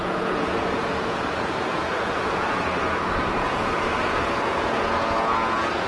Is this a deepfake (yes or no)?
yes